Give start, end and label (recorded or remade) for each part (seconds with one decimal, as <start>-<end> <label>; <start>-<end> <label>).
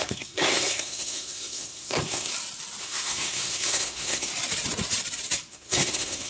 0.0-2.3 remade; 2.3-2.8 recorded; 2.8-4.3 remade; 4.3-5.5 recorded; 5.5-6.3 remade